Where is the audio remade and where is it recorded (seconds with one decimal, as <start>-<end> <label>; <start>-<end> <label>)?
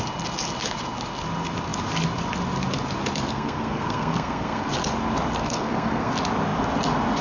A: 0.0-3.3 recorded; 3.3-4.7 remade; 4.7-5.4 recorded; 5.4-6.1 remade; 6.1-7.2 recorded